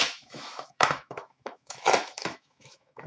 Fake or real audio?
fake